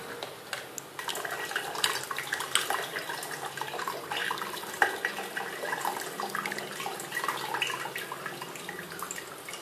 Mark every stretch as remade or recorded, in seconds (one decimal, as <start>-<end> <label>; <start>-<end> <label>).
0.0-4.2 recorded; 4.2-4.9 remade; 4.9-6.9 recorded; 6.9-8.0 remade; 8.0-9.6 recorded